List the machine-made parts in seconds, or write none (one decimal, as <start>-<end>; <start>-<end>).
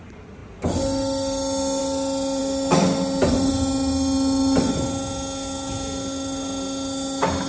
none